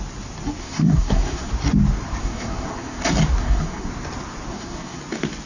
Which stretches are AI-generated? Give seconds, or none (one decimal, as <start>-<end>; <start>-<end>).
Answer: 0.6-1.5; 2.2-3.0; 3.4-3.9; 4.5-5.0